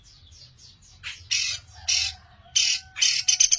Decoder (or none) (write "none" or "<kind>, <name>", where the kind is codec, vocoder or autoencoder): none